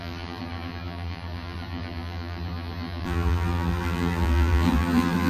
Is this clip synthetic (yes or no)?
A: yes